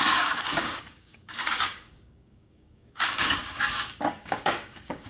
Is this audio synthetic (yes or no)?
yes